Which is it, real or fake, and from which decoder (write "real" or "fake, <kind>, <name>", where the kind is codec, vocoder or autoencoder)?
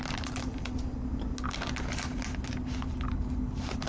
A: real